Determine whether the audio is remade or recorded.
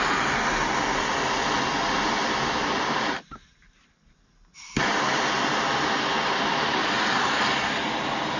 recorded